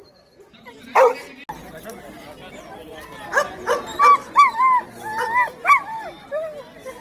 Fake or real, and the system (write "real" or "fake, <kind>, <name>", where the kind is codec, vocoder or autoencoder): real